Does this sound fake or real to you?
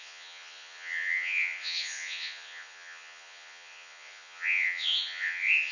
fake